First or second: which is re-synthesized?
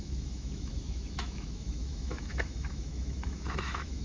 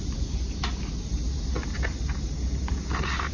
first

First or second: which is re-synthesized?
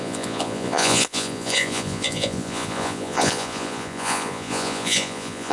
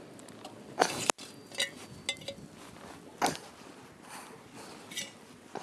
first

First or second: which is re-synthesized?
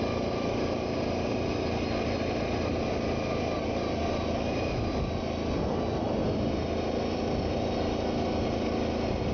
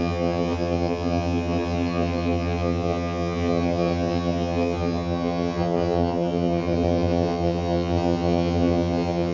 second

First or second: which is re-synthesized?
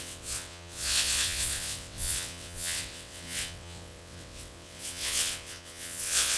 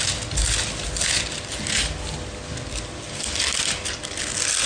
first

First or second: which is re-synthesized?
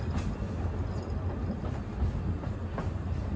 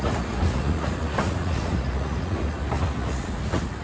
second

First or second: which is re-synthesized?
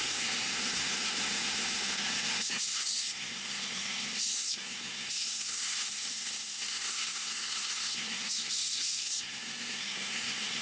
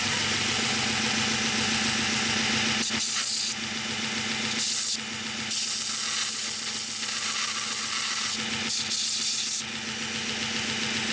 first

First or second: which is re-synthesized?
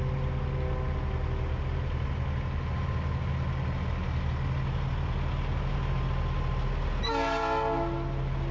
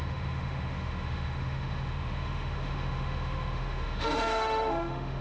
second